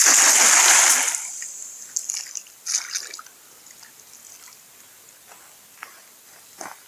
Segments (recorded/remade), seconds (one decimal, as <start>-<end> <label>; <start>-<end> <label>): 0.0-6.9 recorded